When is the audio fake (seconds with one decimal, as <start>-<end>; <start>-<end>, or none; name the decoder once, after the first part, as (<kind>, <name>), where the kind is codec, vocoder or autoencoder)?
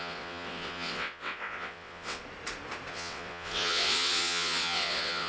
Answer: 0.0-2.2 (vocoder, WaveNeXt); 2.9-5.3